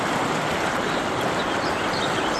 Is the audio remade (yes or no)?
no